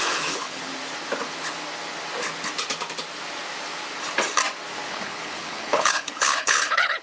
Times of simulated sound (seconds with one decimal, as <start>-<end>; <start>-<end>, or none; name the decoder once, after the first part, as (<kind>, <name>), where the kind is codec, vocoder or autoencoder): 0.0-0.7 (codec, HILCodec); 4.9-7.0